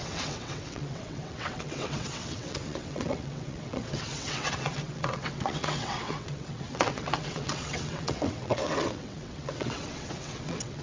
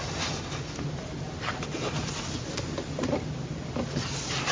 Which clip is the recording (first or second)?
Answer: second